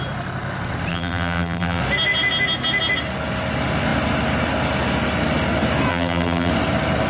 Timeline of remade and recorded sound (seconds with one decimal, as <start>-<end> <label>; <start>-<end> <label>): 0.0-0.9 recorded; 0.9-1.8 remade; 1.8-5.9 recorded; 5.9-6.5 remade; 6.5-7.1 recorded